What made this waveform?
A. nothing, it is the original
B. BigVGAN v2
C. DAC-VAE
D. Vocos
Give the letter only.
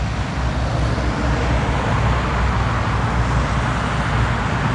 A